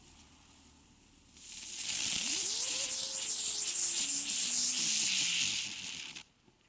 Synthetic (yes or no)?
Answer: no